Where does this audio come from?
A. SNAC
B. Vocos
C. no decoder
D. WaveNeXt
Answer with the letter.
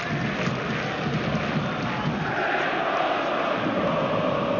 C